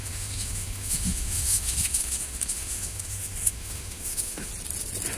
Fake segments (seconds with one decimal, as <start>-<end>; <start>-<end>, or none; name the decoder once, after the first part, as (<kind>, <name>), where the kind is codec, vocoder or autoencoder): 0.0-4.5 (autoencoder, DAC-VAE)